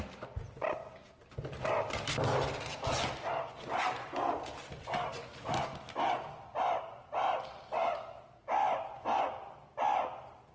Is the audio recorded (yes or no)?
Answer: yes